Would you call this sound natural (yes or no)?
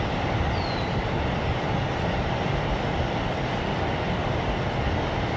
yes